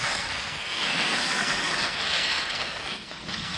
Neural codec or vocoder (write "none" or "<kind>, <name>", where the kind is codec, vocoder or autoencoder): codec, SNAC